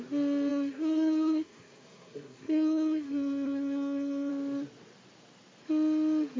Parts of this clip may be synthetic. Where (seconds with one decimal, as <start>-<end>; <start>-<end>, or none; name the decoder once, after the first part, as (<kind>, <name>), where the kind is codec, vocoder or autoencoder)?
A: 0.5-4.3 (codec, SNAC)